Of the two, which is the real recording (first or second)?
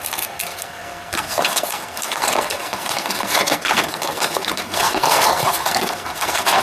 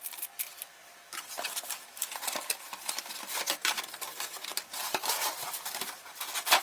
second